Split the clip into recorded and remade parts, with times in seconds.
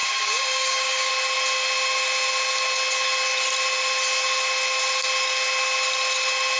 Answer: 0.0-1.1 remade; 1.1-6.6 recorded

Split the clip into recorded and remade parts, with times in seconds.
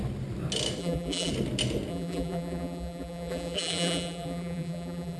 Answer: 0.0-0.8 recorded; 0.8-1.3 remade; 1.3-1.9 recorded; 1.9-5.2 remade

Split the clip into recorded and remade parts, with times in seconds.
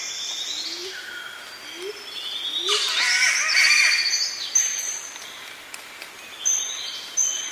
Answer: 0.0-7.5 recorded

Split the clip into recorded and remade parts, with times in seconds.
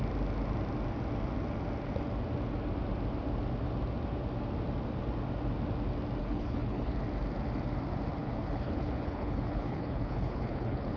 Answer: 0.0-6.2 recorded; 6.2-6.9 remade; 6.9-8.2 recorded; 8.2-11.0 remade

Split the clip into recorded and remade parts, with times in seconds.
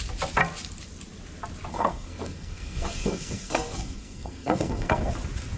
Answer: 0.0-1.7 recorded; 1.7-5.1 remade; 5.1-5.6 recorded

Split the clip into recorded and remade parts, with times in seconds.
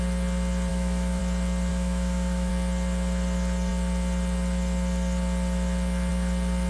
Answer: 0.0-0.7 recorded; 0.7-1.2 remade; 1.2-1.7 recorded; 1.7-2.5 remade; 2.5-6.7 recorded